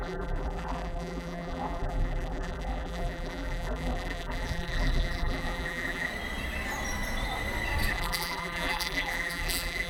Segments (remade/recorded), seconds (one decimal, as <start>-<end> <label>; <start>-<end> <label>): 0.0-6.1 remade; 6.1-7.9 recorded; 7.9-9.9 remade